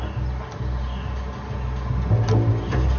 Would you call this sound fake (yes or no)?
no